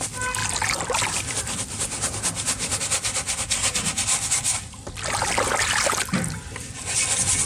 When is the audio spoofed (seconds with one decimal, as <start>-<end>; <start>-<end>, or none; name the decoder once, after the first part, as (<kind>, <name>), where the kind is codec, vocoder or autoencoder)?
none